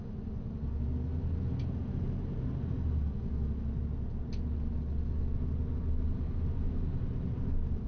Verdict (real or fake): real